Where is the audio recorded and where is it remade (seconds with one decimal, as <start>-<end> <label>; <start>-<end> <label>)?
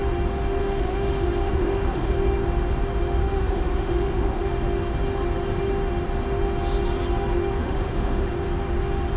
0.0-0.6 recorded; 0.6-2.1 remade; 2.1-3.2 recorded; 3.2-4.4 remade; 4.4-7.6 recorded; 7.6-8.3 remade; 8.3-9.2 recorded